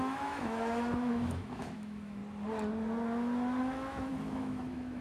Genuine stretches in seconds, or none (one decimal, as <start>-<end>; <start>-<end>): 2.2-3.6